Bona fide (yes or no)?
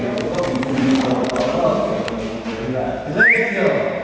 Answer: no